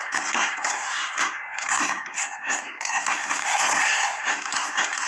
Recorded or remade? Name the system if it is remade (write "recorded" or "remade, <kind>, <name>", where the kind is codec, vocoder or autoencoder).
remade, codec, SNAC